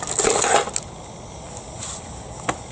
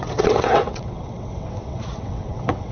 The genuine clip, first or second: first